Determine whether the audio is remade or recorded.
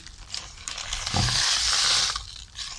remade